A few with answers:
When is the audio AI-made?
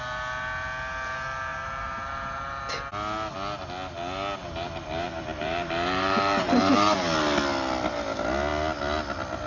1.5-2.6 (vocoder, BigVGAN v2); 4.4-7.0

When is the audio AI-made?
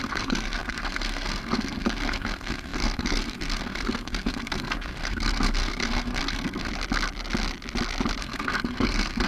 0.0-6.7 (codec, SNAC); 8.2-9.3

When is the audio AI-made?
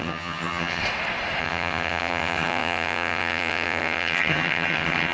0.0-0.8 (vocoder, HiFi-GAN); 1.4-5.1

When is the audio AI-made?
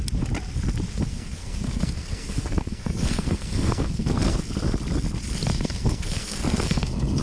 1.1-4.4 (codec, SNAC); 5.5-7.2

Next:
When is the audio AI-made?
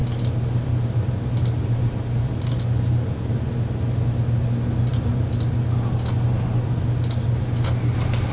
none